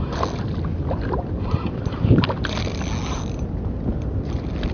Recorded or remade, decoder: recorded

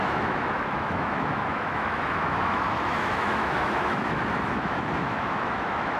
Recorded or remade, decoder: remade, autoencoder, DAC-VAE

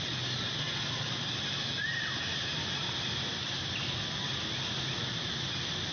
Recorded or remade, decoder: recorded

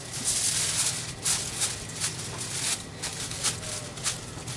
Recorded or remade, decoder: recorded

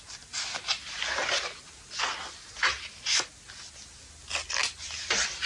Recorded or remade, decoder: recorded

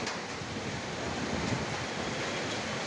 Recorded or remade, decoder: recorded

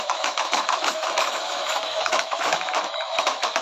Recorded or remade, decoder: remade, autoencoder, DAC-VAE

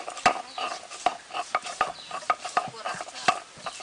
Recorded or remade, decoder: recorded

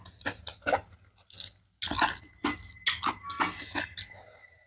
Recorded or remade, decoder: recorded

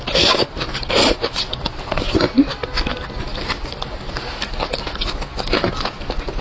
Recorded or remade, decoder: recorded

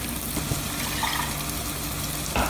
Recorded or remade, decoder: recorded